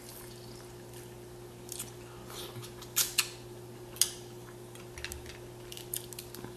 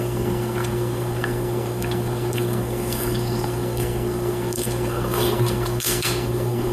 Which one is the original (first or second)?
first